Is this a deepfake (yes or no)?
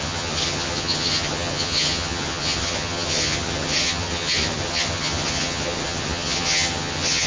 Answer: yes